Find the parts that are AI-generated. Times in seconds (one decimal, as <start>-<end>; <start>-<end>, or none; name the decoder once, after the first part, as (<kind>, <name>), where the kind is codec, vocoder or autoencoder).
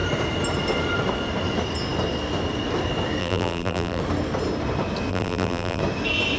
3.2-4.0 (vocoder, BigVGAN v2); 5.1-5.8